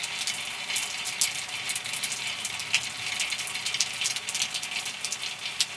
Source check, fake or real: real